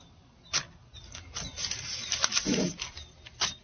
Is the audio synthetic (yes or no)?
no